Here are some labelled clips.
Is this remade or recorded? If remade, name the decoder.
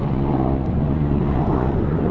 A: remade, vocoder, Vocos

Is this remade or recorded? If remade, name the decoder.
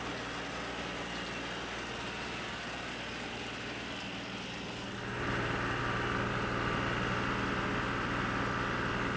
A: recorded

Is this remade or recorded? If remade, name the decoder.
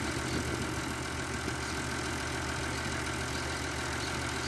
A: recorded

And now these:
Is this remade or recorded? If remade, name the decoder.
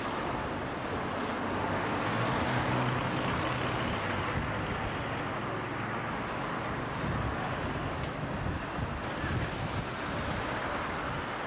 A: recorded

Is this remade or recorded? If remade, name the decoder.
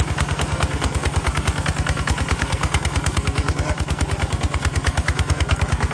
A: remade, codec, SNAC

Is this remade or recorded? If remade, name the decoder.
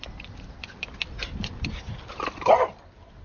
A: remade, vocoder, BigVGAN v2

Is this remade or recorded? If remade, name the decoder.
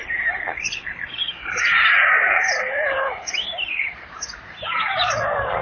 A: remade, vocoder, BigVGAN v2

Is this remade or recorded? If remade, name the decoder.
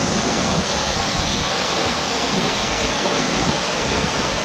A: remade, codec, SNAC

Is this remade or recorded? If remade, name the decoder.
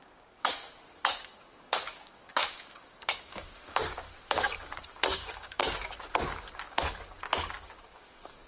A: remade, codec, DAC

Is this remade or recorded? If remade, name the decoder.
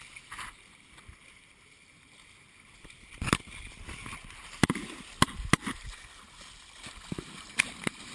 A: recorded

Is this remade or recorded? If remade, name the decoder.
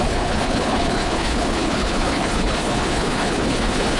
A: remade, codec, HILCodec